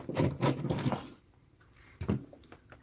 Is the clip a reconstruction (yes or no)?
yes